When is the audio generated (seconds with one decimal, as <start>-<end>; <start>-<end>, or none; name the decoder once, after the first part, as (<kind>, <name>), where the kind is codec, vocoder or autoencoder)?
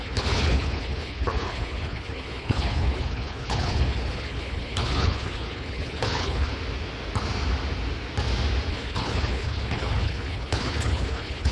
0.0-6.5 (codec, HILCodec); 8.7-11.5